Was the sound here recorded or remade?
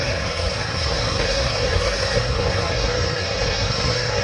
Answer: remade